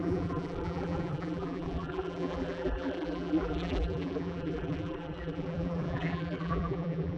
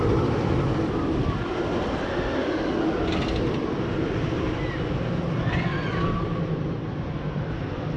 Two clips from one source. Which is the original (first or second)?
second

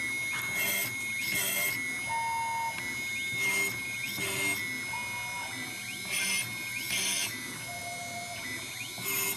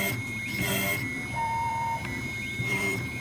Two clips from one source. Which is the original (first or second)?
first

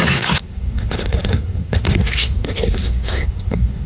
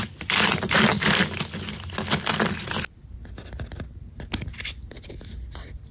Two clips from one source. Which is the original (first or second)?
second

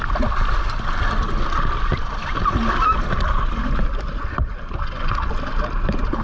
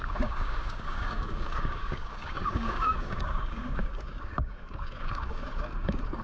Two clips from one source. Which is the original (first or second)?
first